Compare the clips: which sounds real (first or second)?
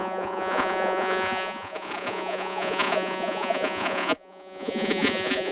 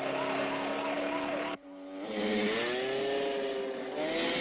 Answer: second